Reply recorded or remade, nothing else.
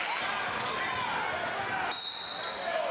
recorded